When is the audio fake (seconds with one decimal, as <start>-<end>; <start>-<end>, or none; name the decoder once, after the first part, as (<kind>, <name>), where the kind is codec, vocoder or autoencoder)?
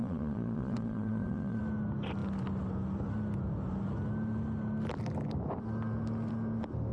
0.0-1.6 (vocoder, Vocos)